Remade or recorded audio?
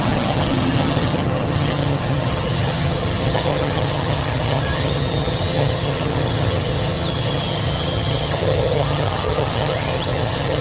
remade